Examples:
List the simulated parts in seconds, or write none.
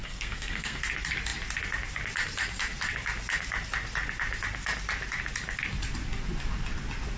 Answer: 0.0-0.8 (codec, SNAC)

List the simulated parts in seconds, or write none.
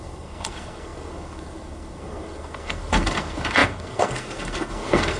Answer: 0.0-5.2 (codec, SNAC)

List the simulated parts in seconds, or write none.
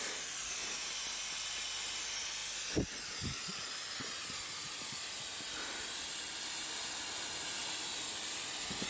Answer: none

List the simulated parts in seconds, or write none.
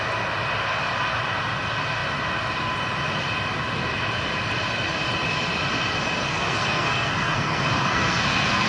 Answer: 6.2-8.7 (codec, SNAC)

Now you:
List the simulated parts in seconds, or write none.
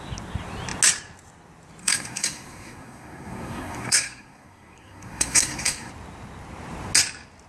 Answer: 1.8-5.9 (codec, SNAC)